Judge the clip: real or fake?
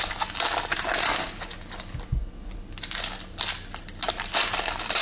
real